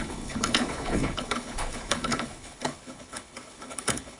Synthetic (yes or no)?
yes